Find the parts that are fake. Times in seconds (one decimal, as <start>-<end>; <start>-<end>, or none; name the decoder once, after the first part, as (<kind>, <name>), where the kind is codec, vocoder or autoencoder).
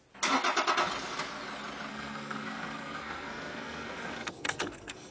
1.9-5.1 (codec, SNAC)